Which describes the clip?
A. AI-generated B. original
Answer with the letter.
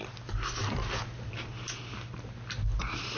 B